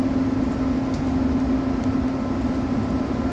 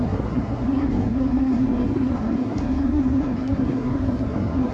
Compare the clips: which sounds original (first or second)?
first